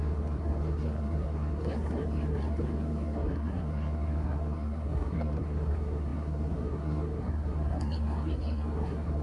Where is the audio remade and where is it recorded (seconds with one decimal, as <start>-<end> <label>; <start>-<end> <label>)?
0.0-9.2 remade

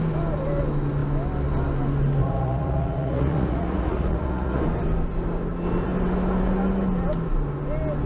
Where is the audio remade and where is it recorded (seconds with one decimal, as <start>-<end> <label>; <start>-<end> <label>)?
0.0-2.2 recorded; 2.2-4.6 remade; 4.6-8.1 recorded

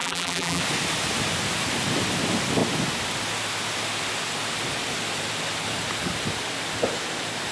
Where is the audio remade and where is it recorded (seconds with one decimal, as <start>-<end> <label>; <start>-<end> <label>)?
0.0-0.6 remade; 0.6-7.5 recorded